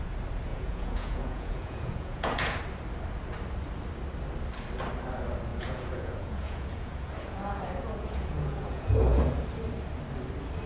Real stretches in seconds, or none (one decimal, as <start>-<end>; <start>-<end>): 0.0-0.5; 2.6-5.5; 9.4-10.7